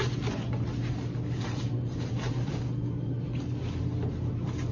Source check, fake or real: real